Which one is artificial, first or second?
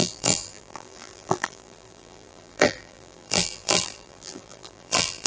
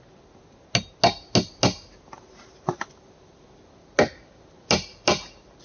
first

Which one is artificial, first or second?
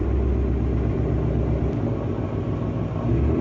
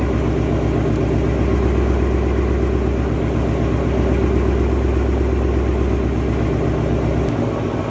first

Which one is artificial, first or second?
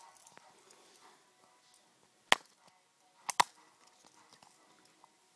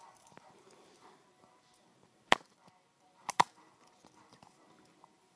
second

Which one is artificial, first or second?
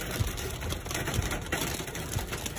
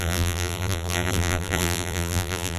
second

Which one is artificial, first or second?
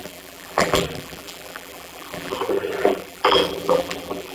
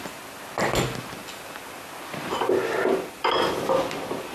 first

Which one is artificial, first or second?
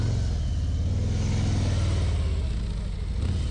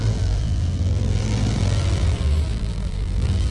second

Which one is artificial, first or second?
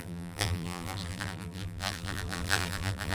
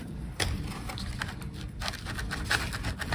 first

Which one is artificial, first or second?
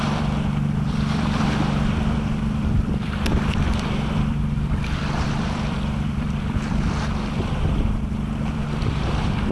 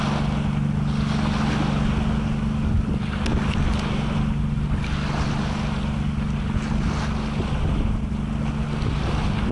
first